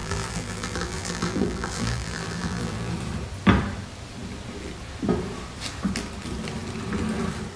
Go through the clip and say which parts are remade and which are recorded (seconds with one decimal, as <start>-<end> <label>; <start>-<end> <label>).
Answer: 0.0-2.9 remade; 2.9-7.6 recorded